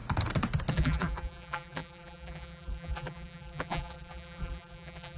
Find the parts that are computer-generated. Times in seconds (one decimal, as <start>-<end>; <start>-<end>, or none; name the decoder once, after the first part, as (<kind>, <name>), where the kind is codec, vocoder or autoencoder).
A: 0.7-5.2 (vocoder, BigVGAN v2)